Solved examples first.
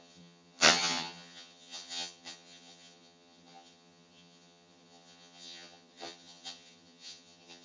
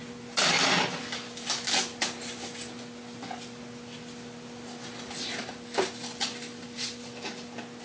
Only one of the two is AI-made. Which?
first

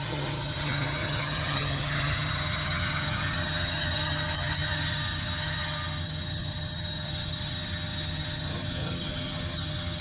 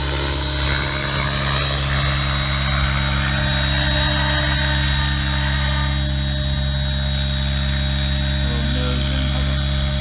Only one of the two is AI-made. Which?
first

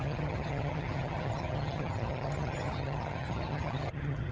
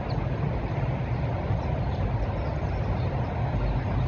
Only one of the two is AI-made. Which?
first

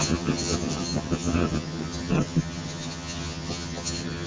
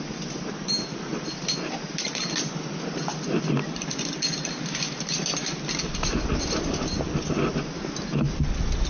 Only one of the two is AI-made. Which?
first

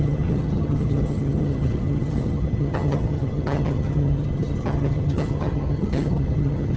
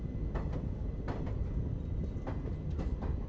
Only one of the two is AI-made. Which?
first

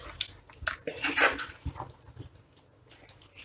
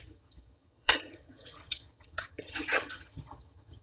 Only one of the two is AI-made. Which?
second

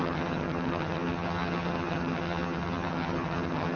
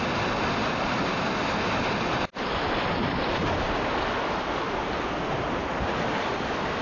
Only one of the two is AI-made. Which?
first